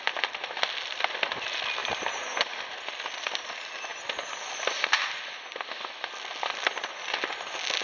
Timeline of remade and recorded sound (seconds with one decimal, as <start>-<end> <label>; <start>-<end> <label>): 0.0-1.8 recorded; 1.8-2.4 remade; 2.4-7.8 recorded